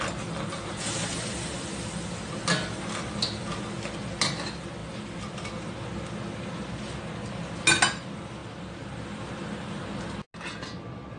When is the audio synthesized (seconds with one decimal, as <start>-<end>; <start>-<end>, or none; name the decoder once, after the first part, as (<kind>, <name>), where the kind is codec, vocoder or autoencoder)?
none